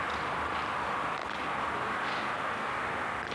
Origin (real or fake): fake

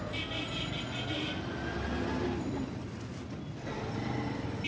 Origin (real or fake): real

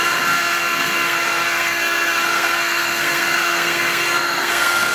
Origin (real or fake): fake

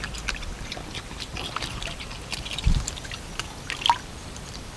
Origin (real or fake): real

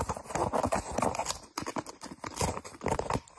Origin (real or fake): fake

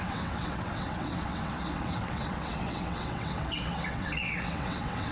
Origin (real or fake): fake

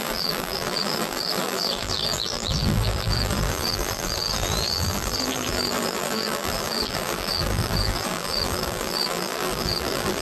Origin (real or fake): fake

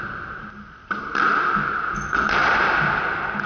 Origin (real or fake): real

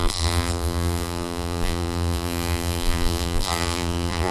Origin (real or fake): fake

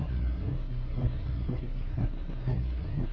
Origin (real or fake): fake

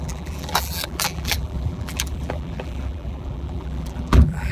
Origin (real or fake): fake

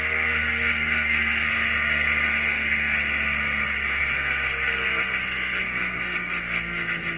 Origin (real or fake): fake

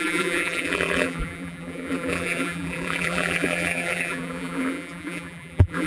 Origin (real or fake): fake